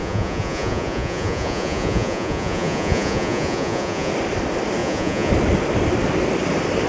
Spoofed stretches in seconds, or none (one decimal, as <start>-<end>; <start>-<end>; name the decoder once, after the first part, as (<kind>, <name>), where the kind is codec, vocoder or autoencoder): 0.0-4.1 (vocoder, Vocos); 4.8-5.3

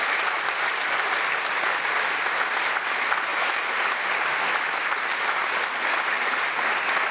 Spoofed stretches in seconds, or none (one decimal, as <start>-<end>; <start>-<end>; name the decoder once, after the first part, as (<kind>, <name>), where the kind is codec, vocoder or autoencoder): none

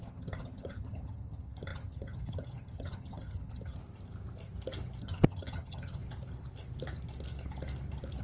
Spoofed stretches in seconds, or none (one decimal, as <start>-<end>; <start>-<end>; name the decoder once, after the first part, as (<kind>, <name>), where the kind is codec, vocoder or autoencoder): 0.0-3.8 (vocoder, HiFi-GAN); 5.0-6.0

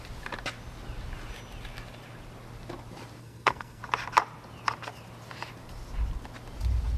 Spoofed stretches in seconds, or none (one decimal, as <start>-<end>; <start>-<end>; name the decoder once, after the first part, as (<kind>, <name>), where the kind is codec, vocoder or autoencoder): 3.2-3.8 (codec, SNAC)

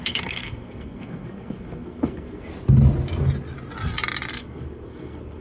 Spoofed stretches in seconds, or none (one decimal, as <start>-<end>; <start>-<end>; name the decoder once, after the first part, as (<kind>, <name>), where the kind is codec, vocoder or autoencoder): 0.0-2.5 (codec, SNAC); 4.4-5.4

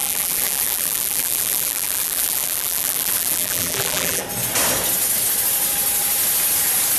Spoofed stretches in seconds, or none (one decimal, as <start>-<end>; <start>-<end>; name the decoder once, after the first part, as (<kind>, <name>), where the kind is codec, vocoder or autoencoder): 0.0-4.2 (vocoder, BigVGAN v2)

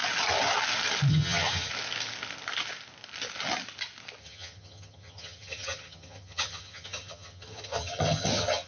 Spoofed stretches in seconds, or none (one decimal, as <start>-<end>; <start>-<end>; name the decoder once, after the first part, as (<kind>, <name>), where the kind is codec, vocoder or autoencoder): 1.1-1.7 (vocoder, HiFi-GAN); 4.2-8.7